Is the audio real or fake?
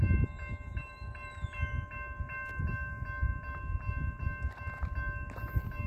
real